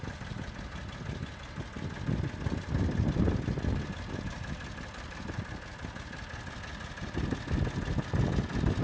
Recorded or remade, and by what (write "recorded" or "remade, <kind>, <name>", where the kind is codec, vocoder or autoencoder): recorded